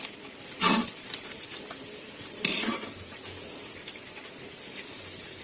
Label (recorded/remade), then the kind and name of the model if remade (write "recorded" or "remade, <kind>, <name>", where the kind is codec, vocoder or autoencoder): remade, vocoder, BigVGAN v2